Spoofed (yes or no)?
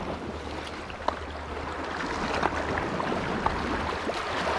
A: no